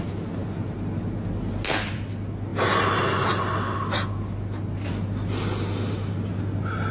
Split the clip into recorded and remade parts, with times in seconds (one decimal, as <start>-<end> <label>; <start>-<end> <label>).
0.0-6.9 recorded